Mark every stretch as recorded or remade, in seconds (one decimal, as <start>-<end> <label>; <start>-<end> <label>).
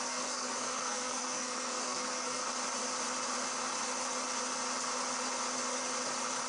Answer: 0.0-2.4 remade; 2.4-6.5 recorded